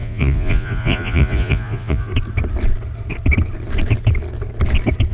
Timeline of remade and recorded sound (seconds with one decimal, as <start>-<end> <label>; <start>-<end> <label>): 0.0-2.1 remade; 2.1-5.1 recorded